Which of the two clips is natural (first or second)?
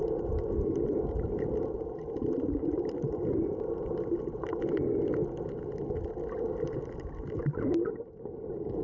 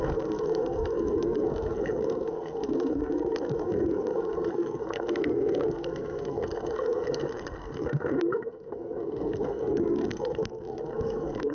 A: first